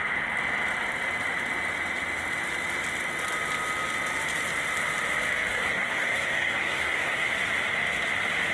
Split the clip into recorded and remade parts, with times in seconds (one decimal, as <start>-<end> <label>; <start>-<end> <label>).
0.0-5.5 recorded; 5.5-7.3 remade; 7.3-8.5 recorded